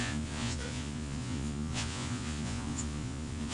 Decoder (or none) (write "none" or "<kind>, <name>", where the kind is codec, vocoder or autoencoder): vocoder, Vocos